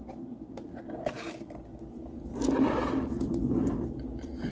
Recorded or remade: recorded